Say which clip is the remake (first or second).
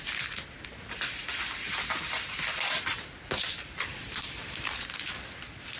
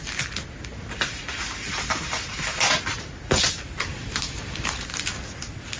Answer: first